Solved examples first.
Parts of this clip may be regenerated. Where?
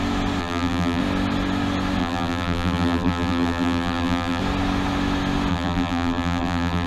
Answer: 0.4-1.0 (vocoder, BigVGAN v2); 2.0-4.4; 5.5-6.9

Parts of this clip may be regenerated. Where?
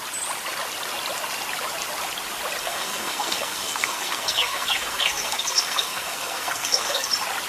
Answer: 2.6-7.1 (codec, SNAC)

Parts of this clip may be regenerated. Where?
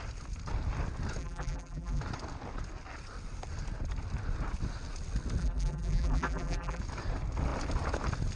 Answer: 1.2-2.0 (vocoder, BigVGAN v2); 5.4-6.8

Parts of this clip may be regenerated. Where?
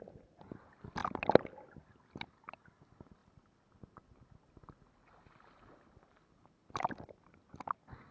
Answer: none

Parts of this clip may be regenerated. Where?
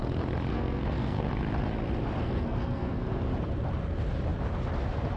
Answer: 0.5-1.3 (codec, SNAC); 2.2-3.2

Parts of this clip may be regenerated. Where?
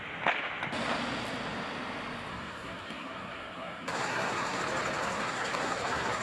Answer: 2.3-4.6 (codec, SNAC); 5.0-6.2